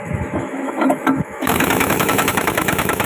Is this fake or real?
fake